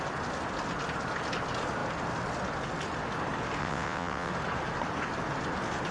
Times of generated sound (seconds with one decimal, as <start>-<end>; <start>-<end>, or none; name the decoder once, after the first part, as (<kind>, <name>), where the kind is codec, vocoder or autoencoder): 3.6-4.3 (vocoder, WaveNeXt)